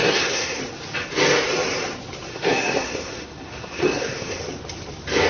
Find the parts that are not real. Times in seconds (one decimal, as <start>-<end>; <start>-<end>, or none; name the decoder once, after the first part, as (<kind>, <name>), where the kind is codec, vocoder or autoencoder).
0.0-0.6 (codec, SNAC); 2.3-4.4